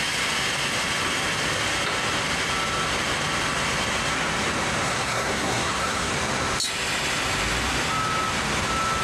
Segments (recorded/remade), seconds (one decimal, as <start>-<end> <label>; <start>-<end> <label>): 0.0-4.8 recorded; 4.8-6.1 remade; 6.1-9.0 recorded